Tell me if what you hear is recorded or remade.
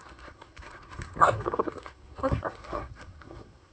remade